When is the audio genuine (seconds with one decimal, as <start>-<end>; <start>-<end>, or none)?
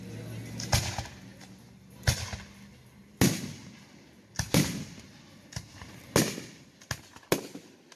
0.0-8.0